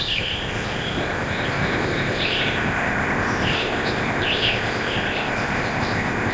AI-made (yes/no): yes